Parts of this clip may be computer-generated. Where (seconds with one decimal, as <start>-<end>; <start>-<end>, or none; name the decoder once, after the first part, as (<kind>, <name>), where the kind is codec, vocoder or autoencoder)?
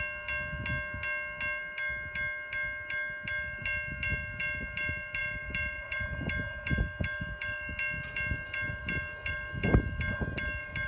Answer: none